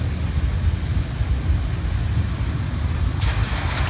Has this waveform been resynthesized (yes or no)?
no